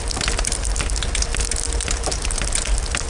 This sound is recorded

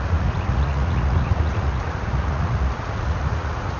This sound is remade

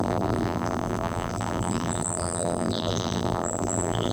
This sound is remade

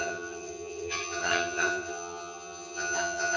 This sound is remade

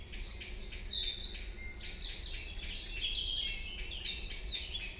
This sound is recorded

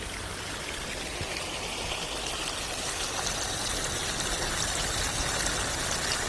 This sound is recorded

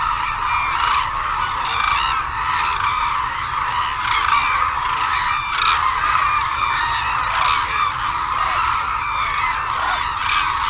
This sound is recorded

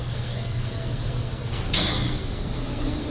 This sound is remade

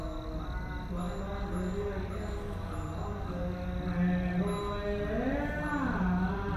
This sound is recorded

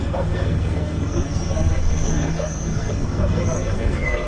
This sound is remade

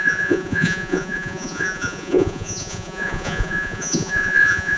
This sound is remade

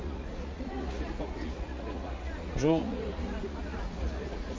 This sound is remade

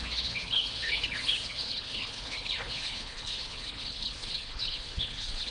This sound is remade